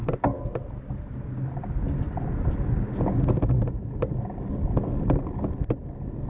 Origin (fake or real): real